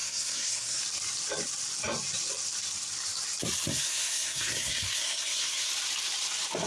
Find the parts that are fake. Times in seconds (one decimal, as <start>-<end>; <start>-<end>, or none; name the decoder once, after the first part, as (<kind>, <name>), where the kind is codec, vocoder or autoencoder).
0.0-0.8 (codec, SNAC); 3.7-5.7

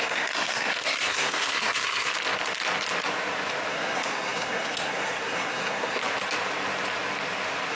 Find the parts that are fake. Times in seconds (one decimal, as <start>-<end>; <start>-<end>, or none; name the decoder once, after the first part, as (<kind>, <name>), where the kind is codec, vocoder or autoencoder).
0.0-2.1 (codec, SNAC); 3.7-6.0

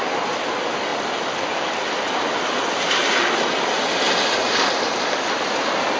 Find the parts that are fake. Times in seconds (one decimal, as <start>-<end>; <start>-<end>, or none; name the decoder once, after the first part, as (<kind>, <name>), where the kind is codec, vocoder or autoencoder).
none

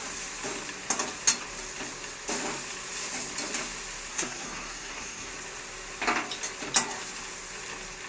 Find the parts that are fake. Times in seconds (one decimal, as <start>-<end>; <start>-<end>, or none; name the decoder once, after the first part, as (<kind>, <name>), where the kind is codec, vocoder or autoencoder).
4.1-5.3 (codec, SNAC)